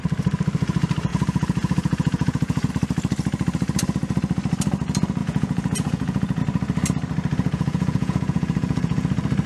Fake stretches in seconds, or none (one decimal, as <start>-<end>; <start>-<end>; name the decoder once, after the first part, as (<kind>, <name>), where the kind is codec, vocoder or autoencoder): 1.1-2.7 (vocoder, Vocos); 5.2-6.4; 7.3-9.1